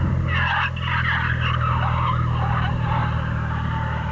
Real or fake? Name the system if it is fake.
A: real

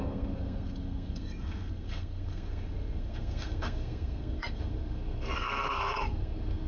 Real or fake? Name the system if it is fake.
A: fake, codec, SNAC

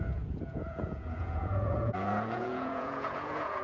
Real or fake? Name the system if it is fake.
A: fake, vocoder, Vocos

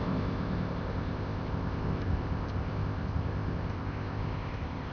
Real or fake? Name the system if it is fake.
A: fake, codec, ZipCodec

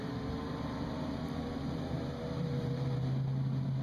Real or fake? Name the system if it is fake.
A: fake, vocoder, BigVGAN v2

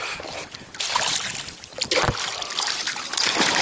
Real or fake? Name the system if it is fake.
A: real